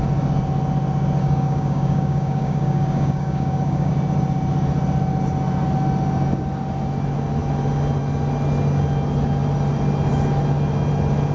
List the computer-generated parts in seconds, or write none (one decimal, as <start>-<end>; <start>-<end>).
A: 1.2-3.9